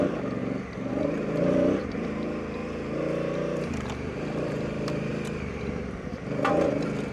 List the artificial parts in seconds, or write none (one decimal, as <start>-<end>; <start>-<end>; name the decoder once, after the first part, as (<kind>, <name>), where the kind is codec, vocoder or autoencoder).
0.0-0.4 (vocoder, BigVGAN v2); 0.9-5.1; 5.8-7.1